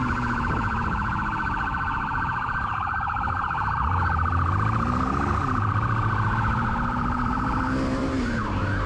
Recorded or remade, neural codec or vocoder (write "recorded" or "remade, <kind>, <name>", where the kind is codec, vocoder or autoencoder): remade, vocoder, BigVGAN v2